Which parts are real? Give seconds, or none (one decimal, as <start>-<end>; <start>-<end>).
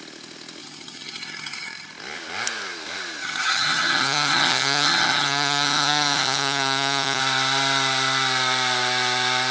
0.0-0.6; 1.9-3.2; 7.2-9.5